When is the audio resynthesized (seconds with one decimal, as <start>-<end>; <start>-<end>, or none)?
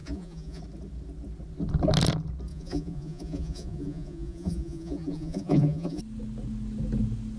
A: 0.0-0.6; 2.5-6.0